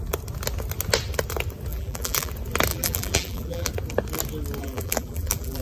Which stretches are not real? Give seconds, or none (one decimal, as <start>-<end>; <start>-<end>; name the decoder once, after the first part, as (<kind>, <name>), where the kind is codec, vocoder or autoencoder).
1.7-2.3 (vocoder, BigVGAN v2); 2.7-3.7; 4.6-5.6